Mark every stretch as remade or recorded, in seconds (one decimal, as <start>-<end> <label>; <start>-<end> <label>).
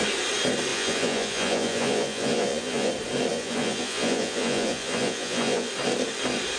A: 0.0-0.7 recorded; 0.7-2.9 remade; 2.9-3.3 recorded; 3.3-5.7 remade; 5.7-6.6 recorded